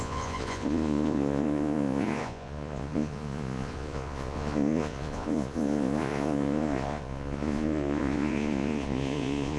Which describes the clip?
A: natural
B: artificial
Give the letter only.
B